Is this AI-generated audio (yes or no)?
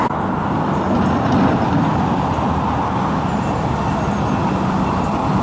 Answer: no